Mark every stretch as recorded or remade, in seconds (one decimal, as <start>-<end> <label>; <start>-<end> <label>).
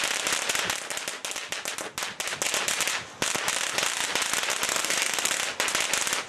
0.0-4.7 recorded; 4.7-5.3 remade; 5.3-6.3 recorded